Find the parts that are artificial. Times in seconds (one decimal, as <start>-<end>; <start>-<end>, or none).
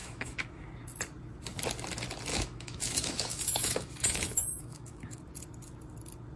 0.0-0.7; 2.3-5.2